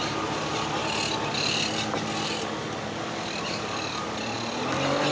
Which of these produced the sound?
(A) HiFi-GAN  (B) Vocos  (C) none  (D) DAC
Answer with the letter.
C